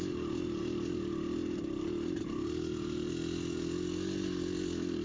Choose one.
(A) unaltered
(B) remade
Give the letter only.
A